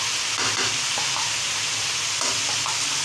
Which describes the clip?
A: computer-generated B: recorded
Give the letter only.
B